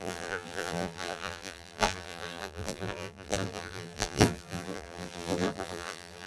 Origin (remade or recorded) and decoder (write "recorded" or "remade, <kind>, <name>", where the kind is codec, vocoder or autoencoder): remade, vocoder, BigVGAN v2